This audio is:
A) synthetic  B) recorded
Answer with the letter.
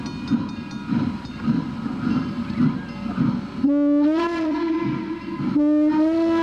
B